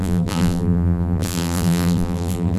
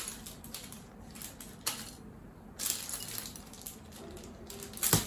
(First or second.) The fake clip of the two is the first